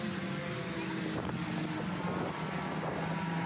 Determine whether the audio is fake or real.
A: real